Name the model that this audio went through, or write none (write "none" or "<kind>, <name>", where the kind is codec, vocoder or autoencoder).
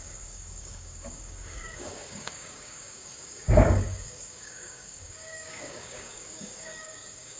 codec, DAC